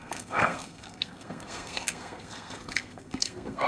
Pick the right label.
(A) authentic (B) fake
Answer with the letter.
B